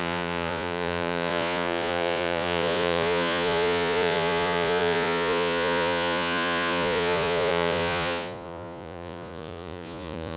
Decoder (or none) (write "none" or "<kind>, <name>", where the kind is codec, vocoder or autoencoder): vocoder, Vocos